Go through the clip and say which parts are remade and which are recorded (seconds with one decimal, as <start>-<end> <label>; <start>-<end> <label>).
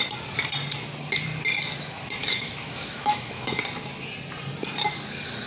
0.0-2.2 recorded; 2.2-3.6 remade; 3.6-5.5 recorded